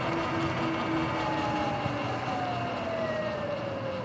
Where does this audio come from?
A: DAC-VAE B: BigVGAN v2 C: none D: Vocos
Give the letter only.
C